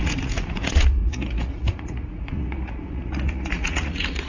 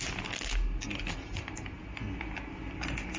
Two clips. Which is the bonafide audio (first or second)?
second